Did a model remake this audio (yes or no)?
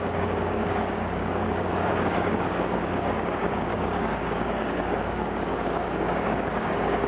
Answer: yes